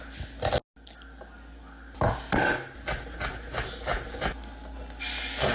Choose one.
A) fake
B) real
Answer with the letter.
B